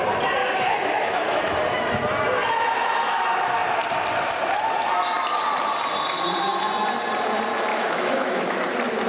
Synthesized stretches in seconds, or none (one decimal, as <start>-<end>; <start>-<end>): 0.4-1.8; 7.7-8.4